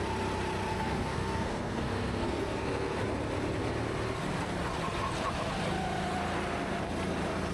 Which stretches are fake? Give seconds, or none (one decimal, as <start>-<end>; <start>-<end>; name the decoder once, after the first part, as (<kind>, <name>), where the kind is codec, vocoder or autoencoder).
0.7-3.0 (codec, SNAC)